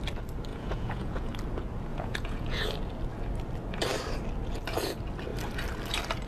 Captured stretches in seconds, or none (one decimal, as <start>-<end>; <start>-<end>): 0.0-0.5; 1.3-1.9; 2.6-6.3